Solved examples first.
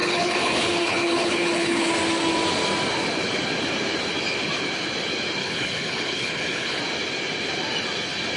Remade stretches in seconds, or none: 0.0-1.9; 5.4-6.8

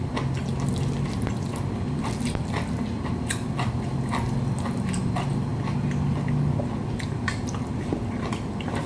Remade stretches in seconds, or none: none

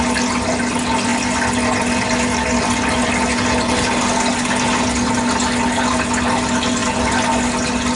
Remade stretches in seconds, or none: none

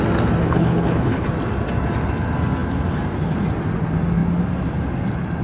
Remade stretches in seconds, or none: 0.4-1.3

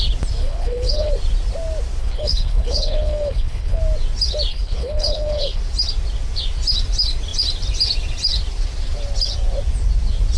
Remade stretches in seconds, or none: 0.4-1.1; 2.0-3.8; 4.5-5.6

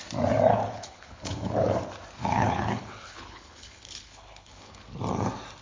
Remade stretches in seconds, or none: 0.6-1.7; 2.2-4.8